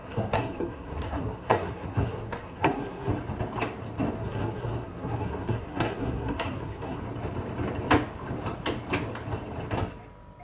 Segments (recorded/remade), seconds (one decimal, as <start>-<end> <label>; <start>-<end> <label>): 0.0-3.1 remade; 3.1-4.2 recorded; 4.2-7.0 remade; 7.0-10.4 recorded